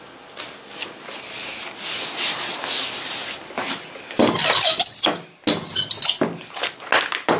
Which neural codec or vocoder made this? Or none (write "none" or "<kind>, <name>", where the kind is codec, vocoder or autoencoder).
none